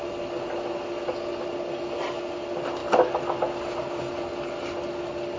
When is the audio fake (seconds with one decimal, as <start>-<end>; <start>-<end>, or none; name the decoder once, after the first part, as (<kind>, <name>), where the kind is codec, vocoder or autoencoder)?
none